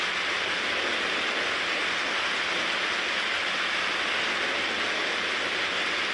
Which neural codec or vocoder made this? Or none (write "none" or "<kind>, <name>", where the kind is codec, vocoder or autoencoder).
none